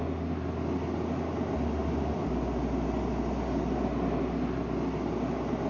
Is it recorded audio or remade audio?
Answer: recorded